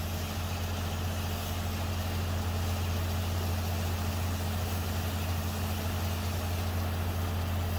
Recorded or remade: recorded